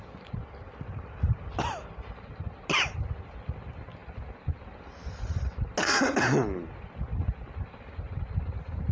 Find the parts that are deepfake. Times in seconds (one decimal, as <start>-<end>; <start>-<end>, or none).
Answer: none